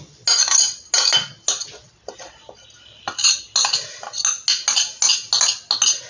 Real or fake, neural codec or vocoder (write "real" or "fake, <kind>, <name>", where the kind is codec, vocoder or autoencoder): real